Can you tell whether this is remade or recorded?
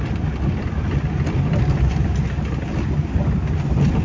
recorded